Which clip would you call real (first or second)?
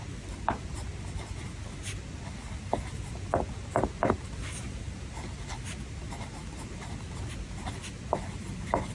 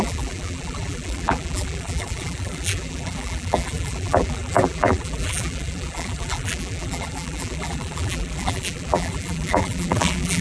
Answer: first